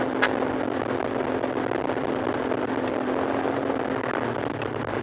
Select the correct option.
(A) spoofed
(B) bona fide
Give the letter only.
B